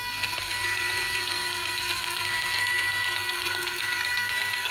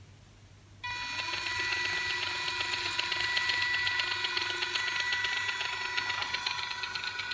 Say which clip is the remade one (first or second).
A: first